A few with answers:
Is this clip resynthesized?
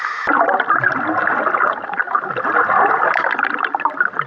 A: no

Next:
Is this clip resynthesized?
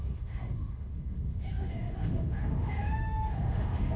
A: yes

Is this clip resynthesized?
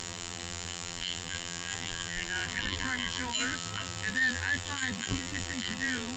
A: yes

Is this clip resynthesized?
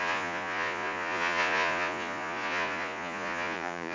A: yes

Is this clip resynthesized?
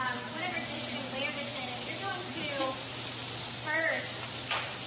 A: no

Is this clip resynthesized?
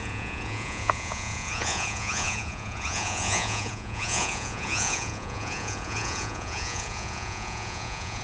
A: yes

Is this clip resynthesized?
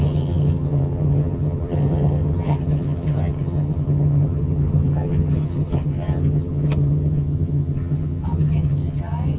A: yes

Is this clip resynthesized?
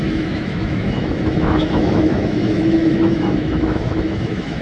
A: yes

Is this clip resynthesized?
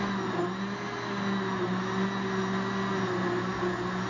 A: no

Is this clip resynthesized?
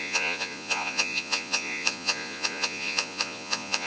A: yes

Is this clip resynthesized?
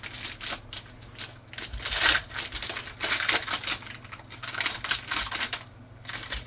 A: no